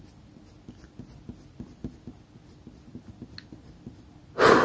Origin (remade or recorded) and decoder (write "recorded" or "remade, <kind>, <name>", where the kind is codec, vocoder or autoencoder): recorded